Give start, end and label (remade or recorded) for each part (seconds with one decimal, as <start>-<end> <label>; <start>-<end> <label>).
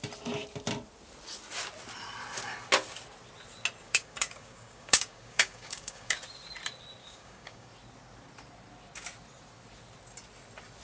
0.0-3.8 recorded; 3.8-6.2 remade; 6.2-7.0 recorded; 7.0-7.7 remade; 7.7-10.8 recorded